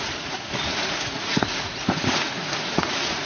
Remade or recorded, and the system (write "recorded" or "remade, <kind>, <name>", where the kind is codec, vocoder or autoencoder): remade, vocoder, Vocos